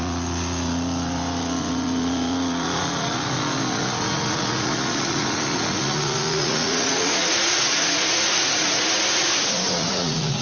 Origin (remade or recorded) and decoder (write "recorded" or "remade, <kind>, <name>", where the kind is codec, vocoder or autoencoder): remade, vocoder, Vocos